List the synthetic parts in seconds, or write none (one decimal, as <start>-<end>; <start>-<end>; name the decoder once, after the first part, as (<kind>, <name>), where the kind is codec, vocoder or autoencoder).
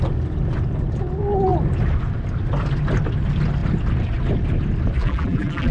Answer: 5.0-5.7 (vocoder, BigVGAN v2)